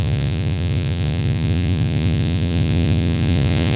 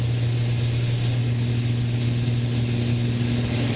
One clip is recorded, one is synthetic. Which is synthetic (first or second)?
first